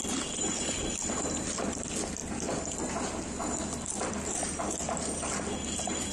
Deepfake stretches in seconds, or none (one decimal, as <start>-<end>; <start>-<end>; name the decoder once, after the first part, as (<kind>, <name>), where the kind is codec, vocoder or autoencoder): none